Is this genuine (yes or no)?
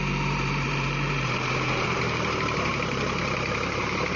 no